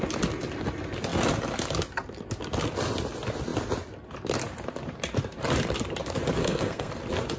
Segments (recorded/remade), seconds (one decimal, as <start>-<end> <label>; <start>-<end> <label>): 0.0-6.4 recorded; 6.4-6.9 remade; 6.9-7.4 recorded